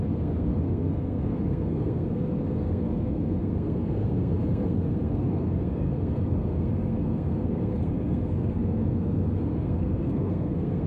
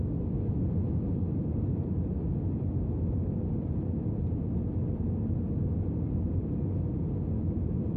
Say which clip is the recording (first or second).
second